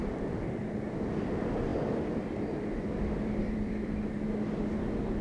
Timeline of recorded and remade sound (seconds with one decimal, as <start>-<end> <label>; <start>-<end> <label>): 0.0-0.6 remade; 0.6-1.7 recorded; 1.7-4.1 remade; 4.1-5.2 recorded